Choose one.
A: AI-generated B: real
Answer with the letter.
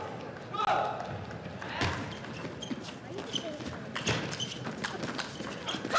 B